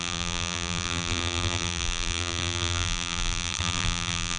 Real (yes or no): no